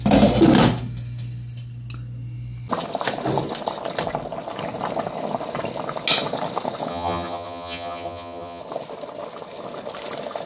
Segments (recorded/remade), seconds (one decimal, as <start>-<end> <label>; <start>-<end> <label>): 0.0-6.9 recorded; 6.9-8.6 remade; 8.6-10.5 recorded

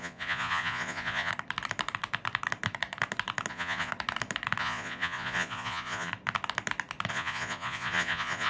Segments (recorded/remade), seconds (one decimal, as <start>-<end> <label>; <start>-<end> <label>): 0.0-1.3 remade; 1.3-3.5 recorded; 3.5-3.9 remade; 3.9-4.6 recorded; 4.6-6.1 remade; 6.1-7.1 recorded; 7.1-8.5 remade

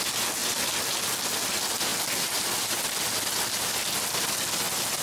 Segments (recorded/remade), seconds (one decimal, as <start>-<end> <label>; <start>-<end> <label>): 0.0-5.0 recorded

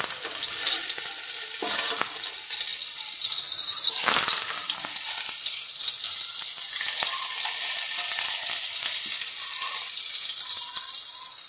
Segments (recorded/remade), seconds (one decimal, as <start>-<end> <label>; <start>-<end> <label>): 0.0-11.5 recorded

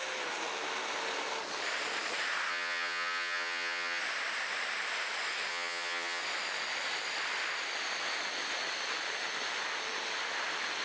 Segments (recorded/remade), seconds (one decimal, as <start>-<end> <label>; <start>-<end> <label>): 0.0-2.5 recorded; 2.5-4.0 remade; 4.0-5.5 recorded; 5.5-6.2 remade; 6.2-10.8 recorded

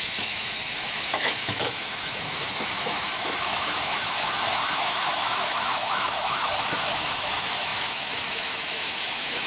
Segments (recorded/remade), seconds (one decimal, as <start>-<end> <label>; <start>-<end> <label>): 0.0-9.5 remade